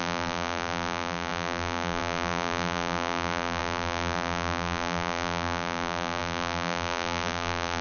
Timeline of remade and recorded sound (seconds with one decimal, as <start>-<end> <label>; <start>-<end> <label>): 0.0-7.8 remade